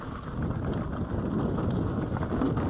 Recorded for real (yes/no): yes